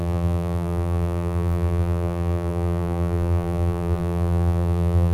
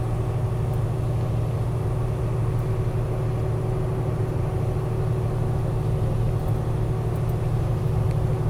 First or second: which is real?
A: second